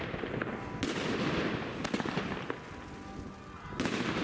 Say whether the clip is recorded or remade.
recorded